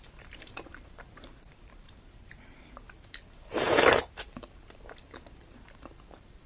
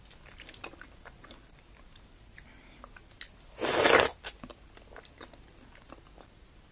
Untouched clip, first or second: second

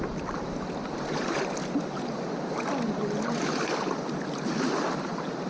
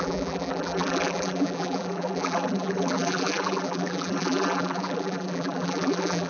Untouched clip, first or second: first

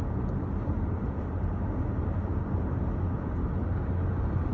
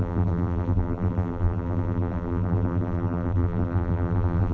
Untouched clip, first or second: first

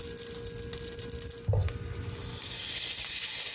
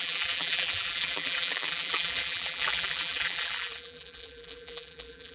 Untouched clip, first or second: first